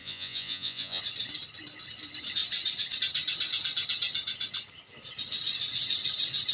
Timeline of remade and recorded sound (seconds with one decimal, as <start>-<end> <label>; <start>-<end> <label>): 0.0-1.0 remade; 1.0-6.5 recorded